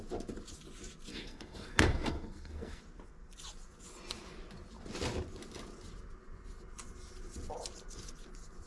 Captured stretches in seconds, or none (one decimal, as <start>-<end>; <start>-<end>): 0.0-1.1; 2.8-8.7